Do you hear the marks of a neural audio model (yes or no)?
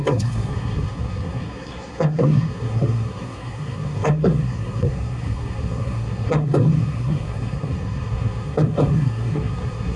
yes